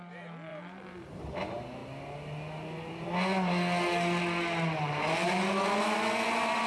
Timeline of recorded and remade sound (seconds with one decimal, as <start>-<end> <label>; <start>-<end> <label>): 0.0-0.5 recorded; 0.5-1.3 remade; 1.3-6.7 recorded